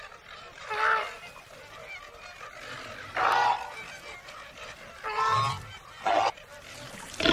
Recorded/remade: recorded